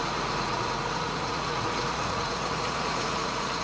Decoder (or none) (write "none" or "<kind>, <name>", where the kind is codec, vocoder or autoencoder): vocoder, Vocos